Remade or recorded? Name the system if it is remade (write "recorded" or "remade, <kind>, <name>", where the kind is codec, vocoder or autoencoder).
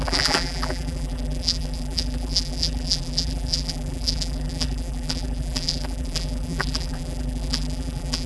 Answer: remade, vocoder, BigVGAN v2